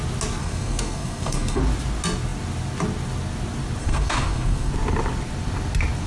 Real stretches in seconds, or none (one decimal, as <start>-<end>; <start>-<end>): 0.0-0.4; 1.6-3.8; 4.7-6.1